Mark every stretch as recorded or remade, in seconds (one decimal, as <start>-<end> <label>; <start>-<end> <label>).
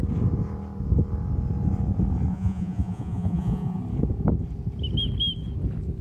0.0-2.3 recorded; 2.3-3.8 remade; 3.8-6.0 recorded